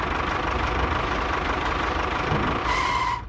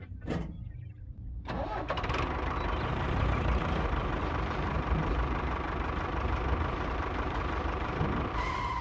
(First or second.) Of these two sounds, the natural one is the first